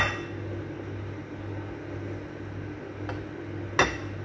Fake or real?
real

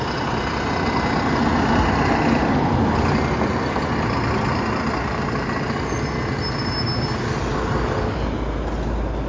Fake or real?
real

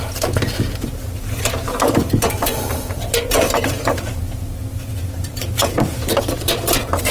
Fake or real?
fake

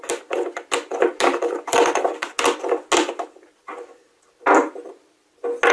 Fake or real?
real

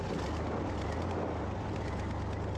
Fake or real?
real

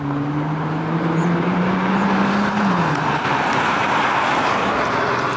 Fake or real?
fake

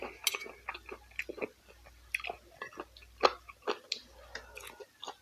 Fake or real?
real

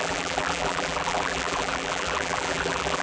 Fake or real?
fake